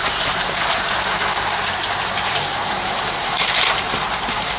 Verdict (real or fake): fake